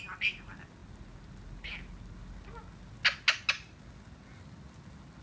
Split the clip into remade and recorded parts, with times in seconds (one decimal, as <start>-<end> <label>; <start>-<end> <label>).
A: 0.0-5.2 recorded